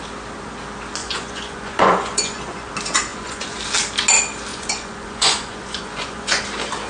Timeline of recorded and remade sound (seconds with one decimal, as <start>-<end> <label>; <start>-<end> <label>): 0.0-1.0 recorded; 1.0-2.7 remade; 2.7-3.1 recorded; 3.1-3.6 remade; 3.6-4.5 recorded; 4.5-6.4 remade; 6.4-6.9 recorded